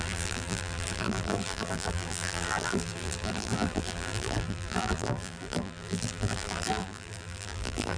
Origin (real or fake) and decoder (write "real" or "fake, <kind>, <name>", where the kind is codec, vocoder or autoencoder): fake, vocoder, BigVGAN v2